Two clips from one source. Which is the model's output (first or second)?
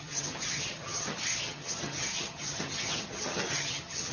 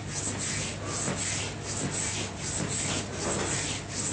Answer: first